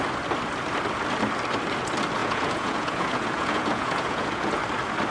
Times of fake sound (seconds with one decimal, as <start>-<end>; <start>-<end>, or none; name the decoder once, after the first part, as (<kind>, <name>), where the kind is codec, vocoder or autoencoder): 2.2-4.6 (vocoder, Vocos)